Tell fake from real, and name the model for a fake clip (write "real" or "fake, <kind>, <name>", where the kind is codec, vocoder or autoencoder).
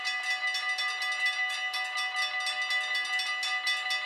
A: real